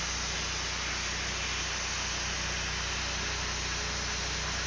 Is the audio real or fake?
real